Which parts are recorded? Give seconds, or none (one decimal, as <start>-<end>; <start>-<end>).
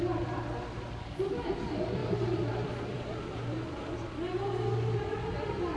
0.0-2.0; 4.1-5.8